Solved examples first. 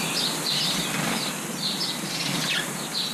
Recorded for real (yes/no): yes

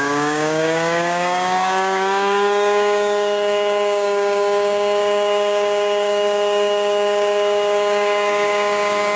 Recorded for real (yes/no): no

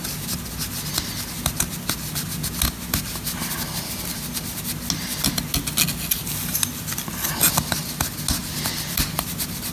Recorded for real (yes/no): yes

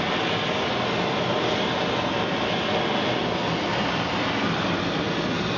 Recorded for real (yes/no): yes